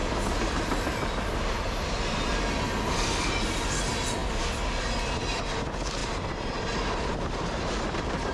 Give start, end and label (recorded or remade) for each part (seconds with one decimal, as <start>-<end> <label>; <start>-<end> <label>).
0.0-8.3 recorded